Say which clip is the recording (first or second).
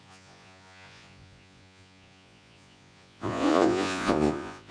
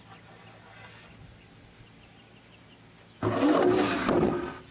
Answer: second